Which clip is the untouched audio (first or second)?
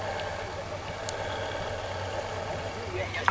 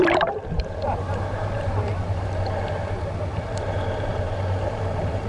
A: first